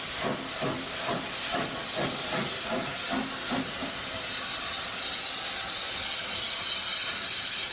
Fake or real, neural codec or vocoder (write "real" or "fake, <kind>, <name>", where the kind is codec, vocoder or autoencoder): real